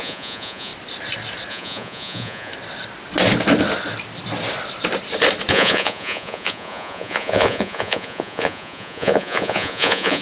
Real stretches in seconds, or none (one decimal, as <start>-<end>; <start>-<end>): 0.7-1.5; 2.5-5.5

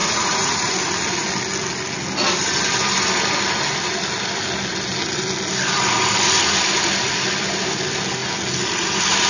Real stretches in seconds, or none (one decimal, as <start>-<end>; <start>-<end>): 0.7-9.3

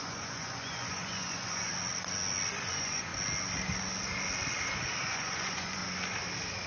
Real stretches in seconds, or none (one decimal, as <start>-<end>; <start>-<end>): 1.7-2.7; 3.1-5.0; 5.8-6.7

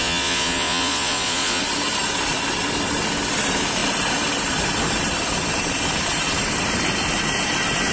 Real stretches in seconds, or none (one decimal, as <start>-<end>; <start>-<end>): 1.6-7.9

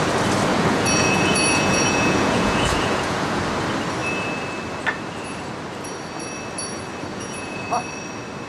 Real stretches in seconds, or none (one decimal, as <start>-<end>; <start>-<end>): 0.0-0.5; 3.4-7.1; 7.7-8.5

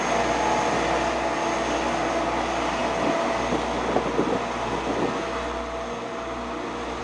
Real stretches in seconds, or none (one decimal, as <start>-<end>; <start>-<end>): 0.0-7.0

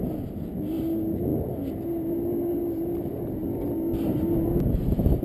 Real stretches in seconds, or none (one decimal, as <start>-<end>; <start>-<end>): 0.0-5.2